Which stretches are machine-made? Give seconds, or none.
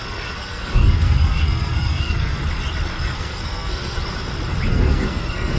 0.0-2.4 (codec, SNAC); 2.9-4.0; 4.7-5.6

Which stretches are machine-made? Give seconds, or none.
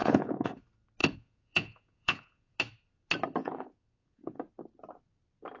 0.0-0.6 (vocoder, Vocos); 1.0-2.6; 3.4-4.4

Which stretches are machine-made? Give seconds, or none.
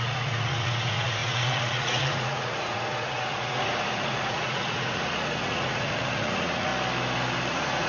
0.0-6.7 (vocoder, Vocos); 7.5-7.9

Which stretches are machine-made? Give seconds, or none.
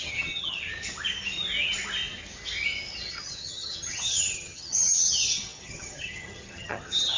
0.0-0.7 (vocoder, HiFi-GAN); 3.1-7.2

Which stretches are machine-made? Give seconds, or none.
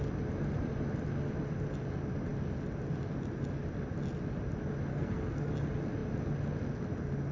4.9-5.5 (codec, SNAC)